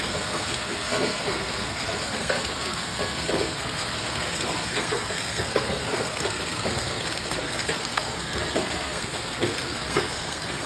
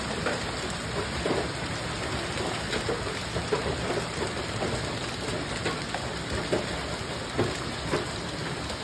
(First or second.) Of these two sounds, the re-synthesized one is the first